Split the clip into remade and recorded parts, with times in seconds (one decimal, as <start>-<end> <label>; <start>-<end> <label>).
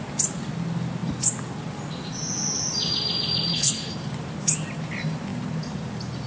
0.0-3.5 recorded; 3.5-4.0 remade; 4.0-6.3 recorded